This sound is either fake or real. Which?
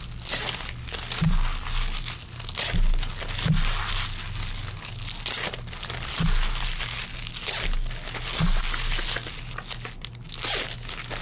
real